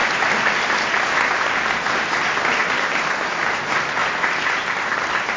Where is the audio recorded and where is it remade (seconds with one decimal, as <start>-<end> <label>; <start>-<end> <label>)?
0.0-4.0 recorded; 4.0-4.9 remade; 4.9-5.4 recorded